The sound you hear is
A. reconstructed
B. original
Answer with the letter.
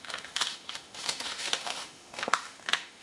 A